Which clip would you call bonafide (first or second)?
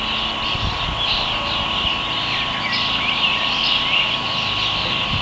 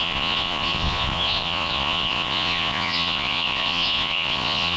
first